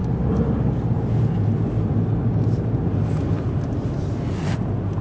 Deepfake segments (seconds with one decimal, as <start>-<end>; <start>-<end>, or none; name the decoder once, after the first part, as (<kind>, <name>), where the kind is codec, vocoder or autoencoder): none